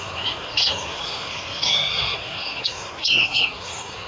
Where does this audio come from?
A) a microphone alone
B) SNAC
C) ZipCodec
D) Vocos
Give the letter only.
B